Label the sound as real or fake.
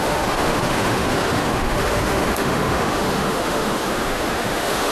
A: fake